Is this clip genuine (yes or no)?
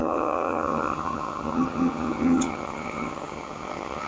no